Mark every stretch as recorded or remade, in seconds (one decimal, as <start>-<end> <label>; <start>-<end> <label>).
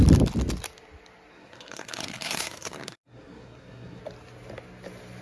0.0-1.3 recorded; 1.3-4.0 remade; 4.0-5.2 recorded